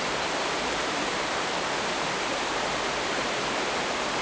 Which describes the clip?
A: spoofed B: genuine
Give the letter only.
A